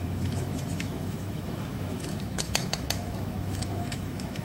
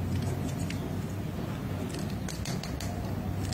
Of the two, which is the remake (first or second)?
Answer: first